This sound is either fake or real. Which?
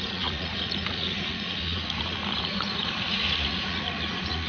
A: fake